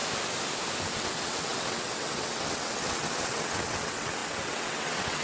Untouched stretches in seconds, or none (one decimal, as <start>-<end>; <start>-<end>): 0.0-0.9